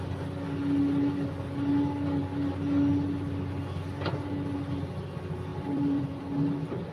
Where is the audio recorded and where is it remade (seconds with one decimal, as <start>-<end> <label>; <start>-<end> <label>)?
0.0-5.5 recorded; 5.5-6.2 remade; 6.2-6.9 recorded